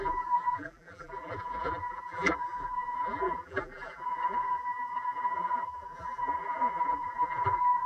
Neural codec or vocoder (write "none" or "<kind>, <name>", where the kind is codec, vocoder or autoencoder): vocoder, BigVGAN v2